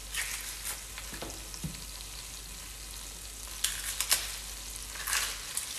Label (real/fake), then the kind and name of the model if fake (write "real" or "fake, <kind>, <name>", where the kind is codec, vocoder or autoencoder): real